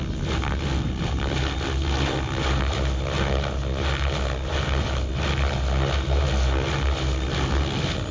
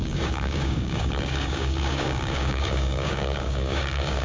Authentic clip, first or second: first